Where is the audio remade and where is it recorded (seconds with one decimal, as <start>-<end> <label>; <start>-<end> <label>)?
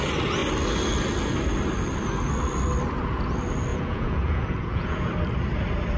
0.0-3.7 recorded; 3.7-5.1 remade; 5.1-6.0 recorded